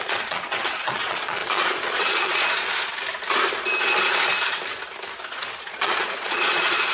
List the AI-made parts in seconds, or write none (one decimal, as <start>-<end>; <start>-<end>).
0.0-2.9; 5.3-6.9